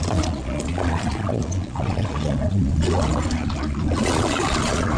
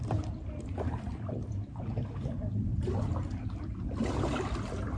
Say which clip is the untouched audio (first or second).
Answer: second